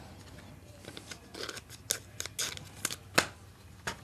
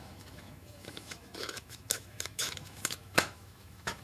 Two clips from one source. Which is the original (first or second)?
first